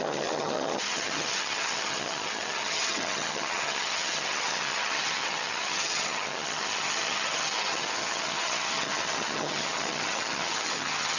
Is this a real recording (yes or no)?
no